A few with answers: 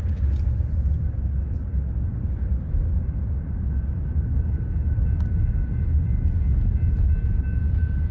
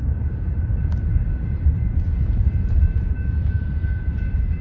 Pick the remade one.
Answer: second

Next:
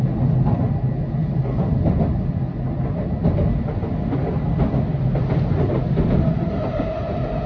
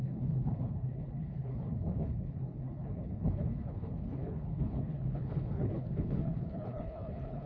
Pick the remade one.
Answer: second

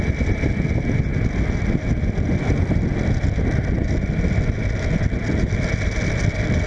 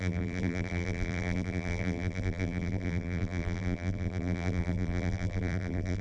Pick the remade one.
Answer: second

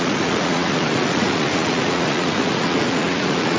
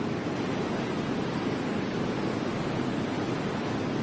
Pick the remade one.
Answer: first